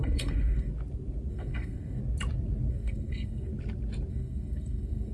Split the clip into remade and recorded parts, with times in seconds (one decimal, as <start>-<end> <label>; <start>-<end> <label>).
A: 0.0-0.7 remade; 0.7-1.3 recorded; 1.3-2.0 remade; 2.0-2.7 recorded; 2.7-3.5 remade; 3.5-4.1 recorded; 4.1-5.1 remade